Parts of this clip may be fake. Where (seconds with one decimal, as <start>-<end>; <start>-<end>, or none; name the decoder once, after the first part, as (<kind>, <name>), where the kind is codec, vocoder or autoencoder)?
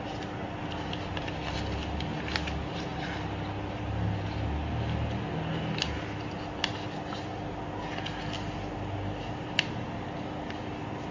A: none